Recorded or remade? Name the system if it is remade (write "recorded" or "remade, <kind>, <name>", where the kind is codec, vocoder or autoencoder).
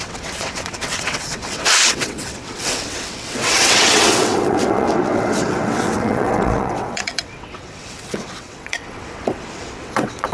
remade, vocoder, WaveNeXt